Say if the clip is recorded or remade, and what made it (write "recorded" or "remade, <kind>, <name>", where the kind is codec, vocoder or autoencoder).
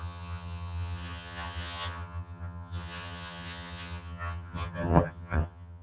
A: remade, vocoder, HiFi-GAN